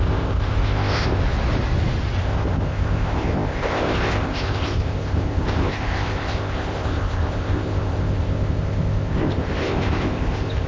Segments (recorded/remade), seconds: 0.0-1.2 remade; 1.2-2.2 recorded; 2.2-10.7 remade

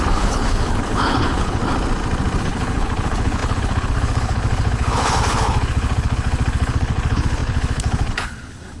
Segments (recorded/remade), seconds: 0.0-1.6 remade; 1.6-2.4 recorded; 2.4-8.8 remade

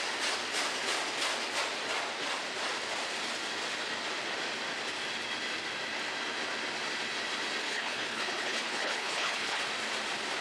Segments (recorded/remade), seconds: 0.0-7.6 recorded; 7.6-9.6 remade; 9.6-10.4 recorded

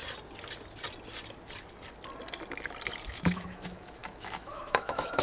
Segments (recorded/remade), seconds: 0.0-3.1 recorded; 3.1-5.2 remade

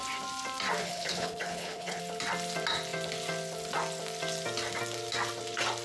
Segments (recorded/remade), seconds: 0.0-0.8 recorded; 0.8-2.0 remade; 2.0-5.8 recorded

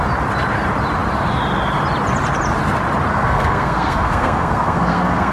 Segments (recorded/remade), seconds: 0.0-3.1 recorded; 3.1-5.3 remade